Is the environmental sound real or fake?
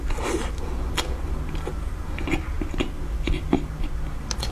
real